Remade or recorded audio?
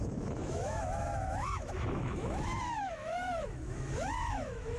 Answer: remade